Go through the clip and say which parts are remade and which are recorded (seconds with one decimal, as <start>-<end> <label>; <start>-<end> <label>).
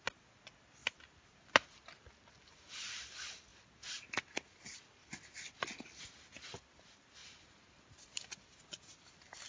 0.0-7.2 recorded; 7.2-8.3 remade; 8.3-9.5 recorded